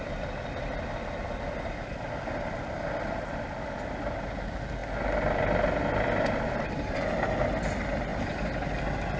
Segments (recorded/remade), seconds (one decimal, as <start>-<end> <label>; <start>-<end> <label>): 0.0-9.2 recorded